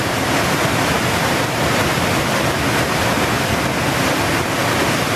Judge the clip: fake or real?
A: real